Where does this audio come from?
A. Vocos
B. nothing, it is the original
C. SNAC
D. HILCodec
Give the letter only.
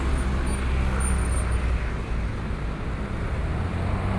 B